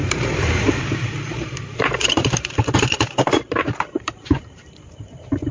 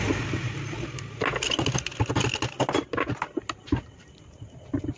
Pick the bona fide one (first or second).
second